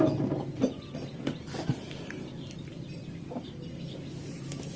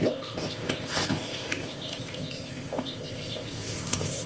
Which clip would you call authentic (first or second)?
first